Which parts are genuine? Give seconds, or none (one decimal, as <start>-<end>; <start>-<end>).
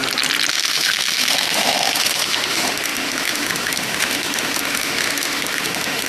0.0-0.5